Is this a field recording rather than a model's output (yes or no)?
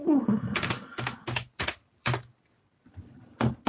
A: no